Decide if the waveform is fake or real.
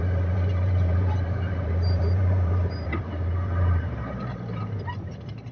fake